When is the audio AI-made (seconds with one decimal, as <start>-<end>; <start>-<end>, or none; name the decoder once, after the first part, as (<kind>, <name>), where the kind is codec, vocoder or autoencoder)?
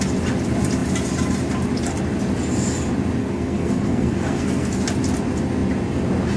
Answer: 3.2-4.8 (codec, SNAC)